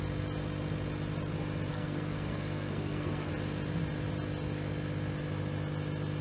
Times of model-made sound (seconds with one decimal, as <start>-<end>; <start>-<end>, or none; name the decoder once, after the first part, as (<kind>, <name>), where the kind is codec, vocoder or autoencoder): 1.7-3.3 (codec, SNAC)